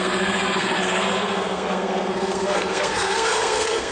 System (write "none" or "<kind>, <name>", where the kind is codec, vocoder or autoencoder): codec, SNAC